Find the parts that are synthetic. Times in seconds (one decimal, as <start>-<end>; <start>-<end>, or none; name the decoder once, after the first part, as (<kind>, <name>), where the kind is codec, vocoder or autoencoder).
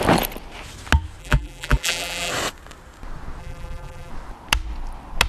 1.2-2.3 (vocoder, BigVGAN v2); 3.4-4.1